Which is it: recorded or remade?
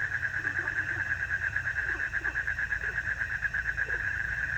remade